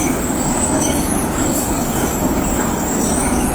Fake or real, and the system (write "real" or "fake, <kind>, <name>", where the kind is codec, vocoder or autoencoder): fake, codec, DAC